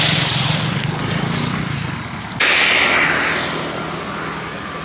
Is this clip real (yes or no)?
yes